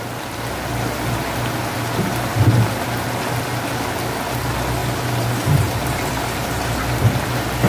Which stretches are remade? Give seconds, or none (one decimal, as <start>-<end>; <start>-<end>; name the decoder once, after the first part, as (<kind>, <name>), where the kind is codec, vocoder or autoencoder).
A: 4.8-6.8 (vocoder, BigVGAN v2)